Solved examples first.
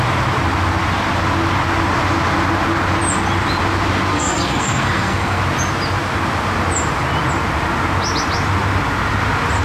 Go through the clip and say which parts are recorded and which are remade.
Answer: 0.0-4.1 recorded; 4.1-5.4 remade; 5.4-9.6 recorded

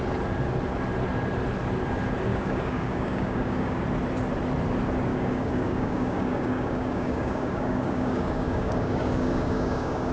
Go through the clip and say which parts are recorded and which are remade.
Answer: 0.0-2.3 recorded; 2.3-3.8 remade; 3.8-5.1 recorded; 5.1-10.1 remade

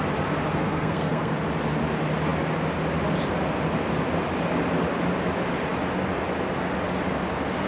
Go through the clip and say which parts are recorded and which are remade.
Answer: 0.0-0.5 recorded; 0.5-1.3 remade; 1.3-7.7 recorded

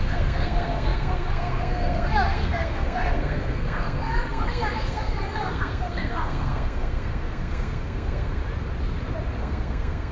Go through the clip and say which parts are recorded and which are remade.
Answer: 0.0-8.4 remade; 8.4-9.4 recorded; 9.4-10.1 remade

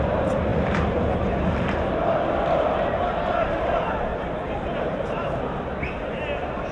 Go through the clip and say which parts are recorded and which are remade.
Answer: 0.0-0.5 recorded; 0.5-1.4 remade; 1.4-4.1 recorded; 4.1-5.4 remade; 5.4-6.7 recorded

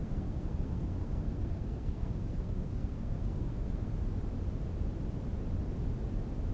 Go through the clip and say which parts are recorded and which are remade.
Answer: 0.0-3.9 remade; 3.9-6.5 recorded